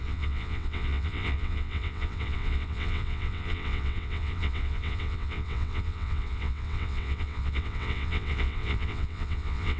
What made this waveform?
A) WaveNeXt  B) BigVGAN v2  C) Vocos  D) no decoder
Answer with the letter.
A